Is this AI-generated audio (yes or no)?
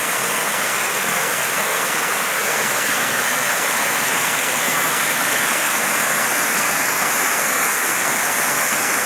yes